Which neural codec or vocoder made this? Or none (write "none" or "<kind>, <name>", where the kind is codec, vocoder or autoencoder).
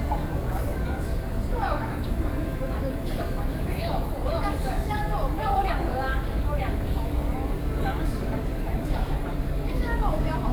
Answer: codec, DAC